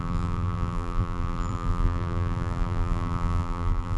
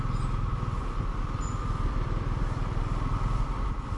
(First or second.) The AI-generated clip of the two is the first